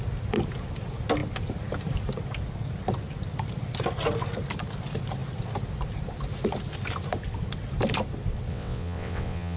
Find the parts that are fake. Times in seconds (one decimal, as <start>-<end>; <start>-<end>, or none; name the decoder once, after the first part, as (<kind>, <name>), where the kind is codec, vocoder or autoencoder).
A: 8.5-9.6 (vocoder, WaveNeXt)